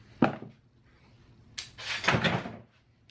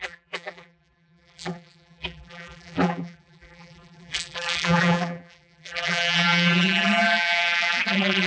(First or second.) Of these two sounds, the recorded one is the first